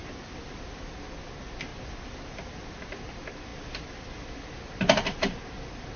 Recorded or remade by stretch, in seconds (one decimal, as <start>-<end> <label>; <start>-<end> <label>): 0.0-0.8 remade; 0.8-1.7 recorded; 1.7-2.8 remade; 2.8-3.5 recorded; 3.5-4.4 remade; 4.4-6.0 recorded